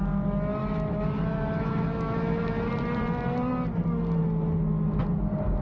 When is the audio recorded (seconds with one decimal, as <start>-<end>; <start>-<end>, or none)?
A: 0.0-0.6; 2.7-5.6